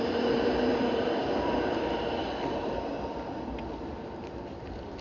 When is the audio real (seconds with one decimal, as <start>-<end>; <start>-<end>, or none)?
0.0-0.7; 3.7-4.2

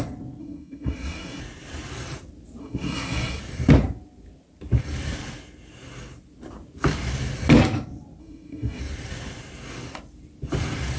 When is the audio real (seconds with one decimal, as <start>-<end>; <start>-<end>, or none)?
0.0-0.4; 1.4-2.6; 3.4-8.2; 8.8-11.0